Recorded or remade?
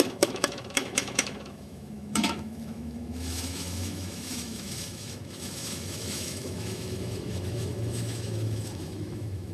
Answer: remade